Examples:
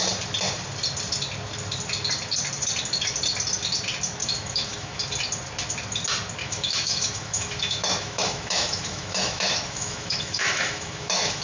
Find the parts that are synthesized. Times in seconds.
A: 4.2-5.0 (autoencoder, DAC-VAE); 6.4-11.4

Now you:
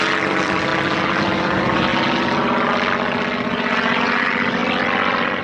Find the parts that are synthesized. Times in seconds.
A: 0.0-0.7 (vocoder, BigVGAN v2); 1.2-1.9; 4.0-4.6

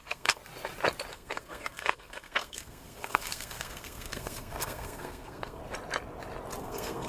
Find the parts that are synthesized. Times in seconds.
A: 0.0-0.4 (codec, SNAC); 1.1-5.6; 6.6-7.1

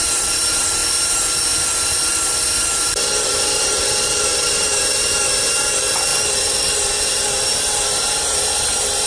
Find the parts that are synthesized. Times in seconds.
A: 0.0-0.8 (vocoder, BigVGAN v2); 3.0-9.1

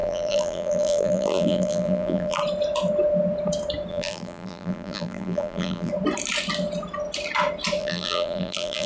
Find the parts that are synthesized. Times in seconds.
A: 0.0-2.4 (vocoder, BigVGAN v2); 3.9-5.9; 7.8-8.9

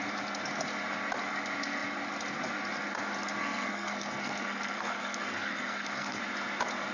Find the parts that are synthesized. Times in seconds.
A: 3.4-6.2 (codec, SNAC)

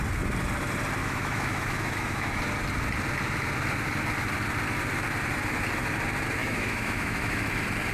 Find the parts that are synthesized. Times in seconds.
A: 1.0-2.4 (autoencoder, DAC-VAE); 6.4-7.5

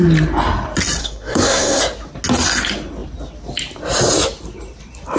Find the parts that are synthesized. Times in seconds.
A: 1.0-1.8 (codec, SNAC)